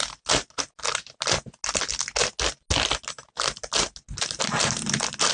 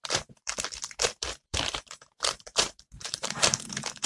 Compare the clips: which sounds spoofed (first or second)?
second